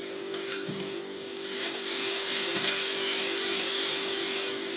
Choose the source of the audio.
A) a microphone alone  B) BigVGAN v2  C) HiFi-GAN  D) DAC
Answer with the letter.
D